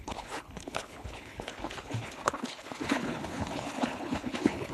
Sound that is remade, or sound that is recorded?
remade